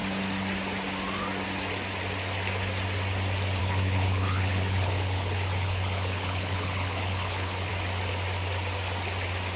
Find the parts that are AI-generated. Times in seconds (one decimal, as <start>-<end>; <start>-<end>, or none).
3.6-7.7